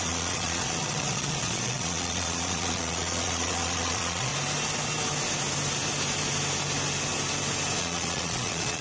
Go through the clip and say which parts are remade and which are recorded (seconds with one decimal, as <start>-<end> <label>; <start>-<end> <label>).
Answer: 0.0-4.3 remade; 4.3-7.8 recorded; 7.8-8.8 remade